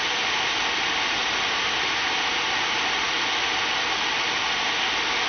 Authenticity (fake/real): real